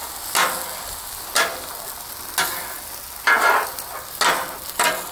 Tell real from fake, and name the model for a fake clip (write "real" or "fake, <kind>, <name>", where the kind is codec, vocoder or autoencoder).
real